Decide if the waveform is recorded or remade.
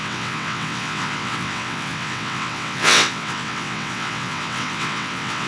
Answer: remade